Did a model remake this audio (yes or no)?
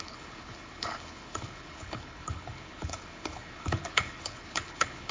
yes